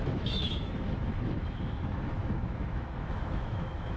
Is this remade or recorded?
remade